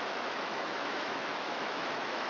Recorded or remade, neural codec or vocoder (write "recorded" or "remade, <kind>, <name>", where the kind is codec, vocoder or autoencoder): remade, autoencoder, DAC-VAE